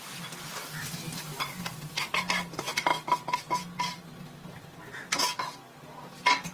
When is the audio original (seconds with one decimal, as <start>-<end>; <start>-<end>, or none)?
0.0-6.5